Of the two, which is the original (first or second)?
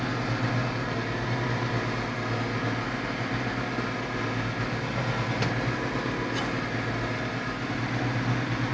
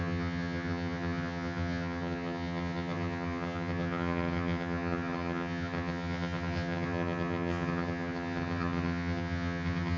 first